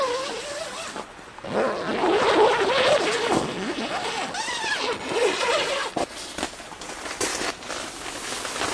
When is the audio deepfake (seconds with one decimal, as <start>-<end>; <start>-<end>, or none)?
none